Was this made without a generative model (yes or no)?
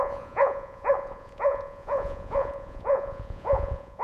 no